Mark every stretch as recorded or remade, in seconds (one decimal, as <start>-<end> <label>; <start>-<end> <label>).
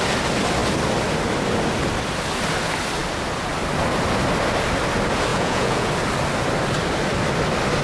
0.0-5.3 recorded; 5.3-5.9 remade; 5.9-7.8 recorded